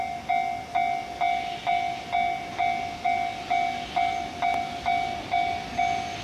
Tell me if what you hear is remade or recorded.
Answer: recorded